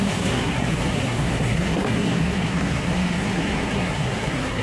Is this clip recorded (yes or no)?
no